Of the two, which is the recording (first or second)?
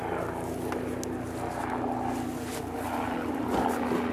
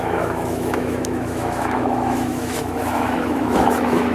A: first